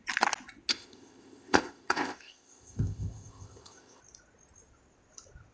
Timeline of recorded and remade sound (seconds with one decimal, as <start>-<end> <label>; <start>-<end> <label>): 0.0-0.7 recorded; 0.7-4.0 remade; 4.0-5.5 recorded